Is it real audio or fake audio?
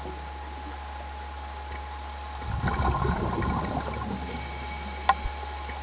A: real